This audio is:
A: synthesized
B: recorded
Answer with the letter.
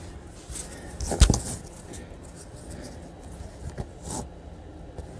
B